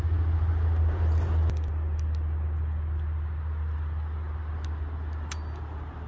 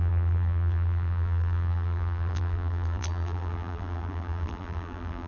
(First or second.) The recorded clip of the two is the first